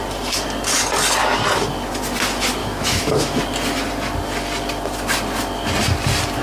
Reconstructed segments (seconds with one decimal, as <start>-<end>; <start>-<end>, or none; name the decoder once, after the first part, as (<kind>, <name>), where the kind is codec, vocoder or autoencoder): 2.6-3.4 (autoencoder, DAC-VAE)